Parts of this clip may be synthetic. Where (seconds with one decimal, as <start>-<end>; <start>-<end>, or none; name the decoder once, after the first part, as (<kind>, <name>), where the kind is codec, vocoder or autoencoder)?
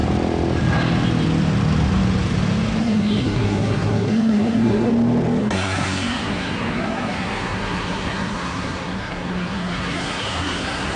2.8-4.9 (codec, SNAC); 5.4-11.0